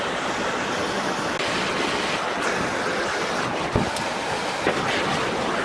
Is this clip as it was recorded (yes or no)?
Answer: yes